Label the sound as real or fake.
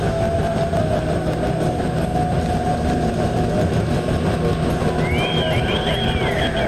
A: real